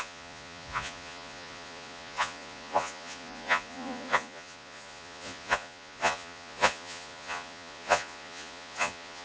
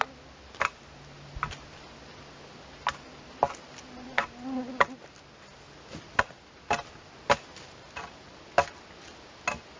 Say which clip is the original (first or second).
second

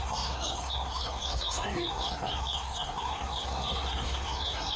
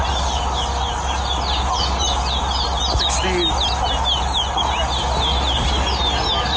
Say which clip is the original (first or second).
second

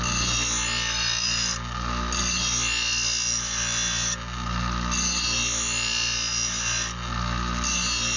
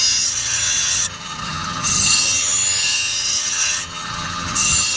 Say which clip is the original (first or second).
first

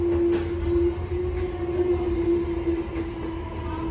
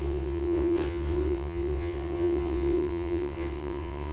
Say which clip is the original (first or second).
first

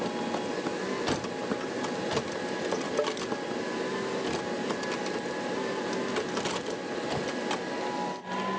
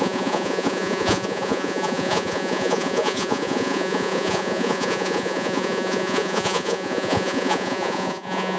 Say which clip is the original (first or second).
first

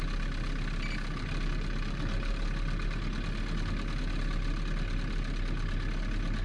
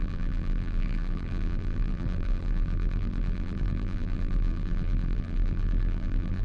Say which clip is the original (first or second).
first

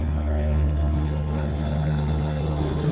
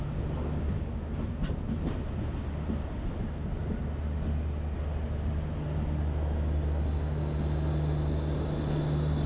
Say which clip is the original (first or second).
second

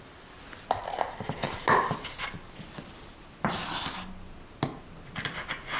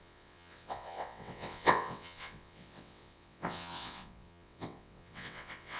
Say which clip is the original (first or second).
first